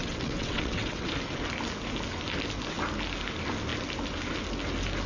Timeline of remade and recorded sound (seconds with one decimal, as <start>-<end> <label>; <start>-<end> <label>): 0.0-1.1 remade; 1.1-5.1 recorded